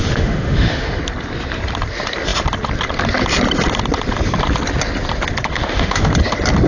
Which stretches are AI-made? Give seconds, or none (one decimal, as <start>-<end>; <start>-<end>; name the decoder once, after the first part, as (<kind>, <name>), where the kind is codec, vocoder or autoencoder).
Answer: 0.0-1.0 (autoencoder, DAC-VAE); 5.5-6.1